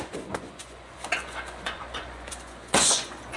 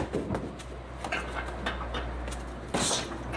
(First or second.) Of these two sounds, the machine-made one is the first